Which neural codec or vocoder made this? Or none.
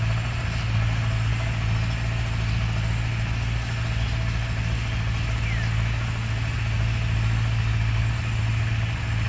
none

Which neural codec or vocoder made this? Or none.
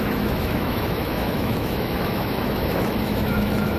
autoencoder, DAC-VAE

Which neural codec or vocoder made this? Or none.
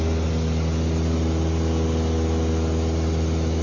none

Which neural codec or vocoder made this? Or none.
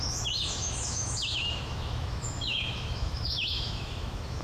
autoencoder, DAC-VAE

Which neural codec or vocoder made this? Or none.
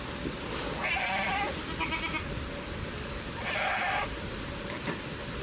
none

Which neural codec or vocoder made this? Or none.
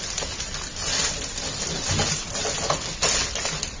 none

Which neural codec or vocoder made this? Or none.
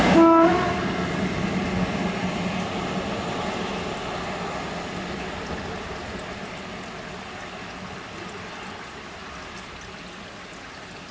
none